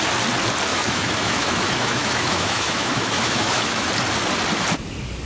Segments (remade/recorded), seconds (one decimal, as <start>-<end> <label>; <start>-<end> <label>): 0.0-0.7 recorded; 0.7-3.9 remade; 3.9-5.3 recorded